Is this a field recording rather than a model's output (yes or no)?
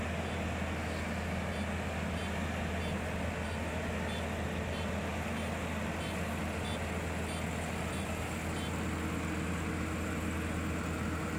yes